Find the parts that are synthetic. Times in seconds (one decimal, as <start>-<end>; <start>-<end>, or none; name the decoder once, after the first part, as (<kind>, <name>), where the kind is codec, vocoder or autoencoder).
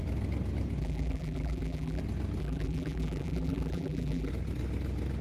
0.8-2.0 (vocoder, BigVGAN v2); 2.4-4.3